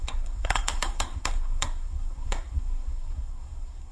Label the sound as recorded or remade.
remade